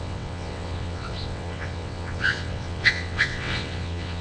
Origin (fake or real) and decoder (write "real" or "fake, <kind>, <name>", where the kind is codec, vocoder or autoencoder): fake, vocoder, WaveNeXt